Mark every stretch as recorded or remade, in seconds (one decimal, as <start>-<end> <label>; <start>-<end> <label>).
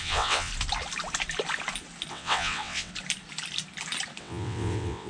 0.0-0.5 remade; 0.5-2.1 recorded; 2.1-2.9 remade; 2.9-4.2 recorded; 4.2-5.1 remade